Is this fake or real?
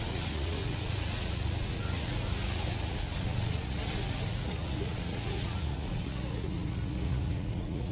fake